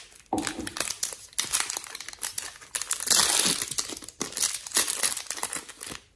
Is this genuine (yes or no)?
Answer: yes